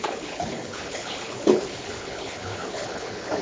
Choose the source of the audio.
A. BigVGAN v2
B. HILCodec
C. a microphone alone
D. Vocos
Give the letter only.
B